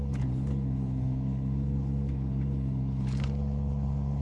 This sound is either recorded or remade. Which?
remade